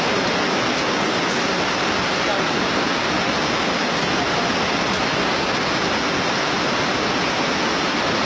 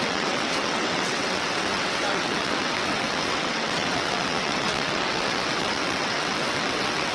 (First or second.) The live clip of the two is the first